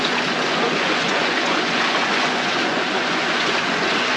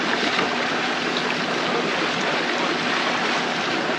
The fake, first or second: first